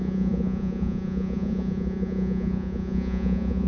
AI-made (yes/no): yes